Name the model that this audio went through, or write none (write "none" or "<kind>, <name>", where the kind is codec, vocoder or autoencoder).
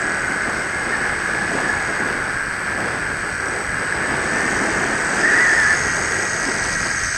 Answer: none